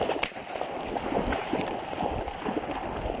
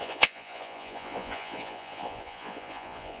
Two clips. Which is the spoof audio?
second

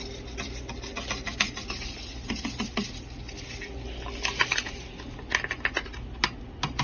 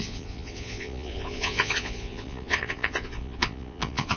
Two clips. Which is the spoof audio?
second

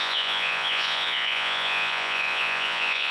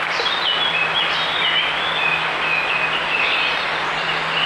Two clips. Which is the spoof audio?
first